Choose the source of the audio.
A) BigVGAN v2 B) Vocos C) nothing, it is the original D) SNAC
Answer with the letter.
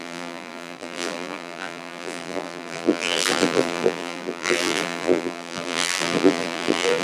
A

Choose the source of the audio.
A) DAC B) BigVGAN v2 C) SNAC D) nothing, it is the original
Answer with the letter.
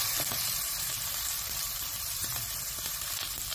B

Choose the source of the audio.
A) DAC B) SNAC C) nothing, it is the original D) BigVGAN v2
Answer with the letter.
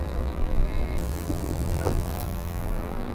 D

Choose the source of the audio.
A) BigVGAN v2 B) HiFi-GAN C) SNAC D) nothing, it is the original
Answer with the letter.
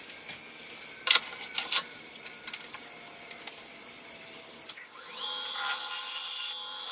A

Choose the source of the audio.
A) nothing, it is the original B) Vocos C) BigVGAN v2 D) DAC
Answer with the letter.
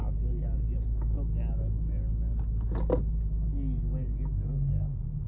A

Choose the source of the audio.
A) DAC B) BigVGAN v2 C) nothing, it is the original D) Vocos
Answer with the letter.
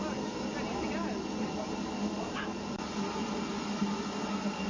C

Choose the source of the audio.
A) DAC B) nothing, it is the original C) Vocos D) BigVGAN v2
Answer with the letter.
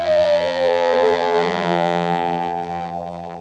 D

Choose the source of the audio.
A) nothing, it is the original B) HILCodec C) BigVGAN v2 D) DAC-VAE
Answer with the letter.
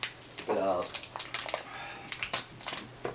A